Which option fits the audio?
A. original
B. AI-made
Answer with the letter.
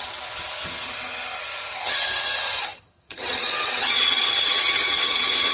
B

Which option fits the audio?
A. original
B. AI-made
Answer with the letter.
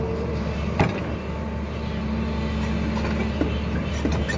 A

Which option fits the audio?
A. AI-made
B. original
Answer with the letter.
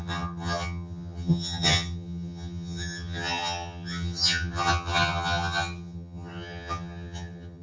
A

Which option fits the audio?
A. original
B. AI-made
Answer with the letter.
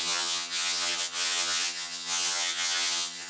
B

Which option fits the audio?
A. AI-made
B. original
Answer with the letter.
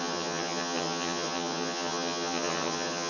A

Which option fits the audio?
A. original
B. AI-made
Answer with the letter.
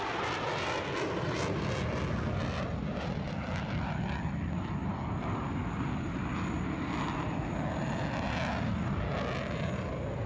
A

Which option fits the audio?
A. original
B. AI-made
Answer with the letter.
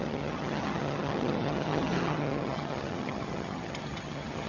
B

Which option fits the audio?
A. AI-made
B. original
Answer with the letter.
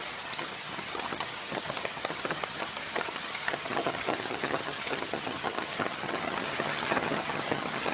A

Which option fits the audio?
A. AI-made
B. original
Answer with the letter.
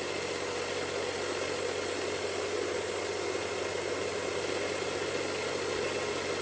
B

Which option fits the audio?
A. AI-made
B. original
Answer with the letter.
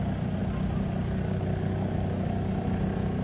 B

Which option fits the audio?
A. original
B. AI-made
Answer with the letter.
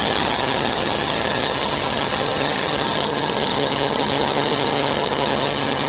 B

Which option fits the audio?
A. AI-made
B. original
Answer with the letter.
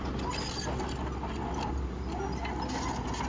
B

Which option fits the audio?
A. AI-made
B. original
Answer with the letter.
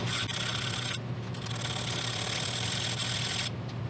B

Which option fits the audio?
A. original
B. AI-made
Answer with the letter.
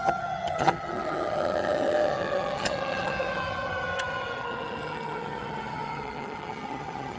B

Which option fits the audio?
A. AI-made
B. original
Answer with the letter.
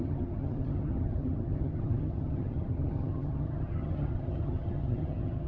A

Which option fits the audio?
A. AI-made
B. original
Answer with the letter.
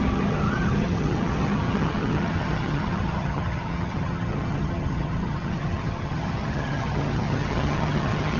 A